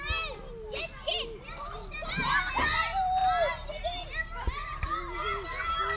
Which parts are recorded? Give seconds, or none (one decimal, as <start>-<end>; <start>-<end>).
0.0-6.0